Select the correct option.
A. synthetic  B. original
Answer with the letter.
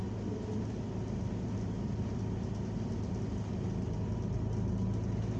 B